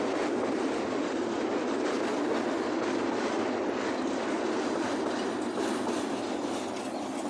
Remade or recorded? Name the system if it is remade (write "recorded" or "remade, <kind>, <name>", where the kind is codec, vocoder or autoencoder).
recorded